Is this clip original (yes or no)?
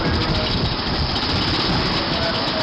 yes